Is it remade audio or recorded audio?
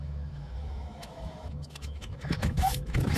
remade